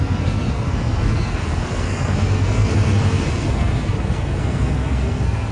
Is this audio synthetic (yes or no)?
yes